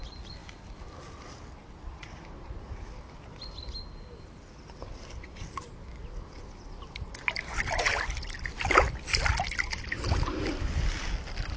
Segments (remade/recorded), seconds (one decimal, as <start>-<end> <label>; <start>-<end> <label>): 0.0-11.6 recorded